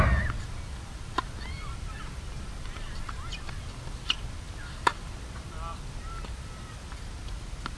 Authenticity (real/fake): real